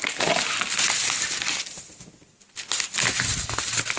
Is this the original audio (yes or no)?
yes